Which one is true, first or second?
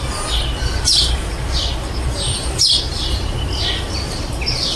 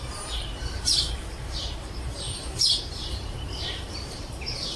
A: first